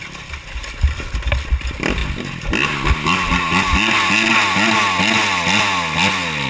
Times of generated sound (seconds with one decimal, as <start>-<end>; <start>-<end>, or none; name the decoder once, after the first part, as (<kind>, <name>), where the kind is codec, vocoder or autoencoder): none

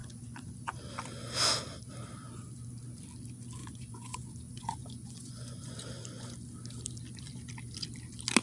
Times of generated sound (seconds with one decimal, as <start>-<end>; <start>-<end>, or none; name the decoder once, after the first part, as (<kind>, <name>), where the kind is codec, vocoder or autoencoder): 0.0-0.5 (vocoder, Vocos); 3.6-5.7